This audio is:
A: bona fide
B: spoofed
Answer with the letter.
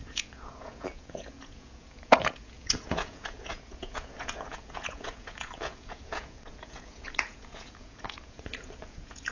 B